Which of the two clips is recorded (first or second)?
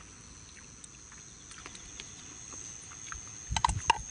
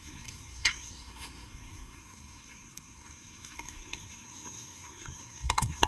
first